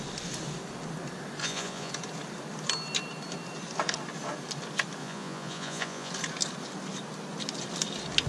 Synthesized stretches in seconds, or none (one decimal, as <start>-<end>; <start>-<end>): 1.4-1.9; 5.0-6.1